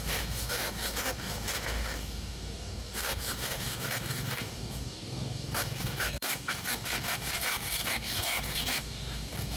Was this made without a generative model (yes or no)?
no